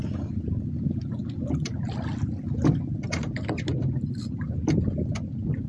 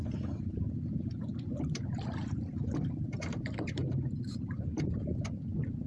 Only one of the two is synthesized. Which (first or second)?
second